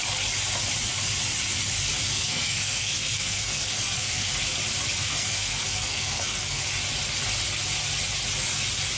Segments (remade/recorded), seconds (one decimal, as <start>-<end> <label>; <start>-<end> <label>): 0.0-2.1 recorded; 2.1-4.3 remade; 4.3-5.1 recorded; 5.1-6.6 remade; 6.6-9.0 recorded